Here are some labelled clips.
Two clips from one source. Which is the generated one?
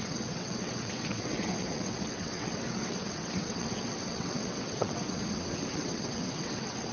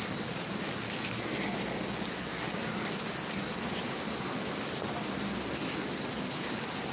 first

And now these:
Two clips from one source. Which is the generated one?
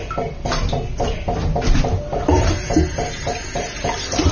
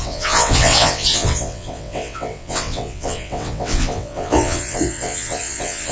second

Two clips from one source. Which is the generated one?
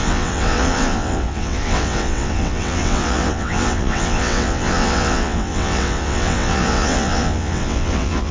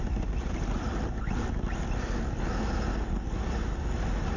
first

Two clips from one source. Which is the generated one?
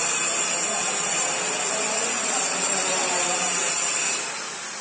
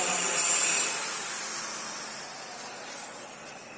first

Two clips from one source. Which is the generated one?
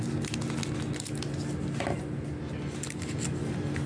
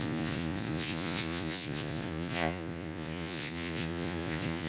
second